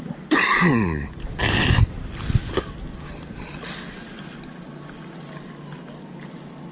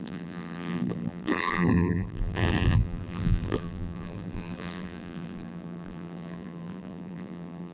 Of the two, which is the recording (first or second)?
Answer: first